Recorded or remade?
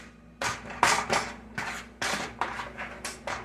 recorded